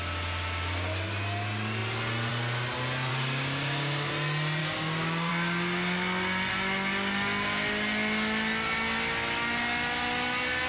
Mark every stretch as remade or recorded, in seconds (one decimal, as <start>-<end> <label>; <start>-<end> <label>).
0.0-3.1 recorded; 3.1-4.1 remade; 4.1-4.6 recorded; 4.6-5.3 remade; 5.3-10.7 recorded